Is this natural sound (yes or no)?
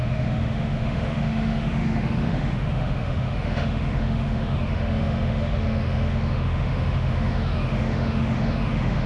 no